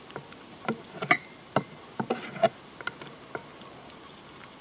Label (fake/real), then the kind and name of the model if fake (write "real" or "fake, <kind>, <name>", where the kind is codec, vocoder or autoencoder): real